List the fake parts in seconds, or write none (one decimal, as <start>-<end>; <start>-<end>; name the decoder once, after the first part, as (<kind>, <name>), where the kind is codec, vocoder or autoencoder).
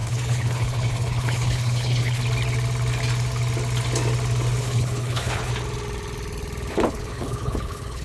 0.0-2.2 (codec, HILCodec); 4.6-5.5; 6.7-8.0